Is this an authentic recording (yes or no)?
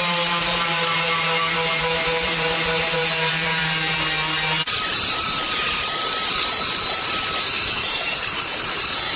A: no